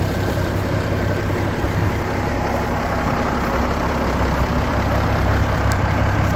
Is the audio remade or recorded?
remade